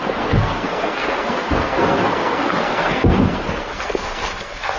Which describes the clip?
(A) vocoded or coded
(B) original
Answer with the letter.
A